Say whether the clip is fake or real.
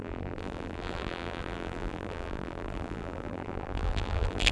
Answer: fake